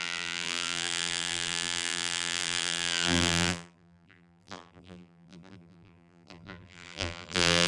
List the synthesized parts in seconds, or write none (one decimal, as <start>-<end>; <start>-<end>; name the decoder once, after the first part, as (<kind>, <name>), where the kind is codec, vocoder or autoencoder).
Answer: 0.0-7.7 (vocoder, BigVGAN v2)